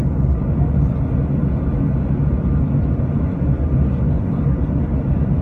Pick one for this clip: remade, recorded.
recorded